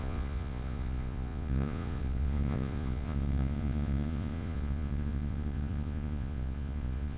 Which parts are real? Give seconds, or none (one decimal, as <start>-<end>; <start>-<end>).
none